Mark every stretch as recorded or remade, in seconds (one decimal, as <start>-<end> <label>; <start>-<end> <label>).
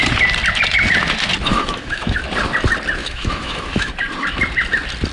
0.0-1.5 recorded; 1.5-2.2 remade; 2.2-3.0 recorded; 3.0-3.9 remade; 3.9-5.1 recorded